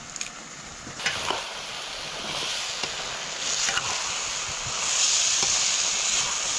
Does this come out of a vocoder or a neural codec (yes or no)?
no